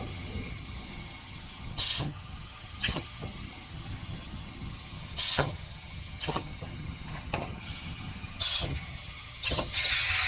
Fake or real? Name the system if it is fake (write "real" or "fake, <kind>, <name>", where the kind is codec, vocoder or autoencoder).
fake, vocoder, HiFi-GAN